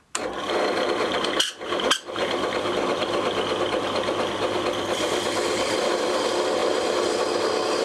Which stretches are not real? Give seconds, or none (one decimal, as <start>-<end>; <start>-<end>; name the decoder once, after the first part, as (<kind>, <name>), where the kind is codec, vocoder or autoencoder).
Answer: 6.6-7.2 (vocoder, BigVGAN v2)